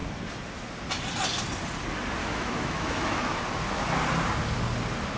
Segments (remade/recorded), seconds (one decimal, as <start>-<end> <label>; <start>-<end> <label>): 0.0-2.2 recorded; 2.2-3.4 remade; 3.4-5.2 recorded